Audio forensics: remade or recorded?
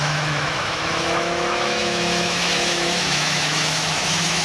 remade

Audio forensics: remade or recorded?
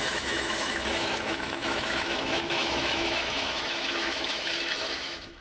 remade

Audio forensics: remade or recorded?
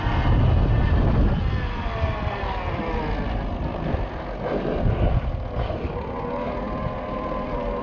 recorded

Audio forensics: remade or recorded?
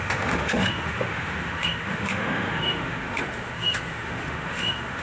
remade